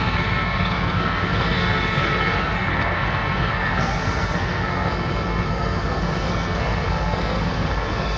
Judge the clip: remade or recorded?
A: remade